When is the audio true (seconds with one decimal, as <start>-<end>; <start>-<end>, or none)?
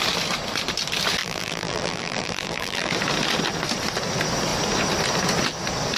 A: 0.0-1.2; 2.9-6.0